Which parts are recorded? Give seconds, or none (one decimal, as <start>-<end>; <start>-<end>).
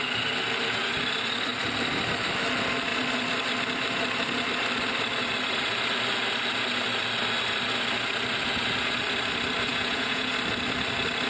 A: 0.0-9.7; 10.3-11.3